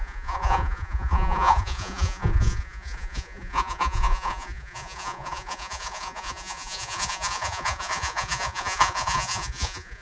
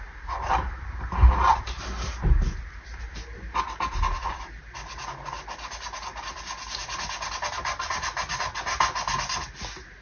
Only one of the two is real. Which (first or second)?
second